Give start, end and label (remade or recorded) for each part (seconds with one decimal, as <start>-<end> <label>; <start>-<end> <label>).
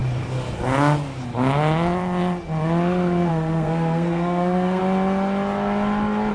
0.0-3.3 recorded; 3.3-4.8 remade; 4.8-6.3 recorded